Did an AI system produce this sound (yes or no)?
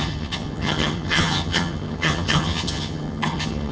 yes